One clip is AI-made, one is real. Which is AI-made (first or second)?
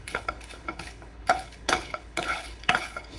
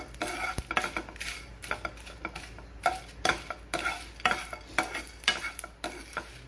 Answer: first